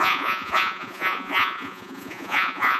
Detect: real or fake fake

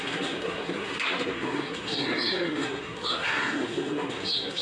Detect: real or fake fake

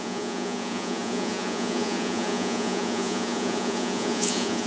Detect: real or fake fake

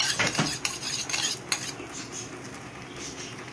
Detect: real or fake real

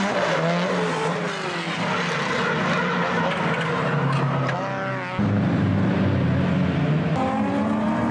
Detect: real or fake real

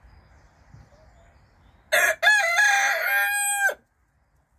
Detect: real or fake real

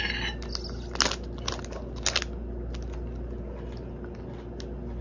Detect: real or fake real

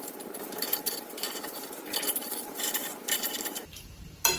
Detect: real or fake fake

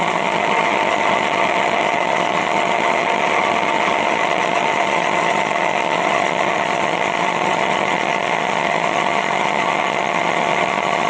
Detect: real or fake fake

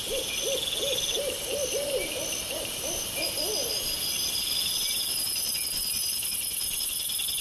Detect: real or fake real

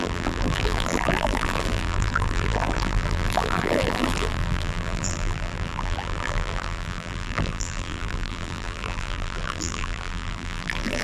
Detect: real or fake fake